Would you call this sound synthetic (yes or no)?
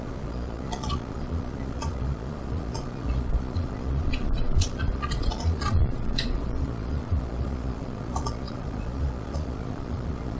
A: yes